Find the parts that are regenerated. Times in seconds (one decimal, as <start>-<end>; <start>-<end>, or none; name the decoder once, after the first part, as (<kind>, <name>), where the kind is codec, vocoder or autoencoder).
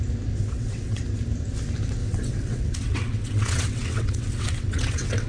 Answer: 0.4-1.0 (vocoder, WaveNeXt); 2.0-5.3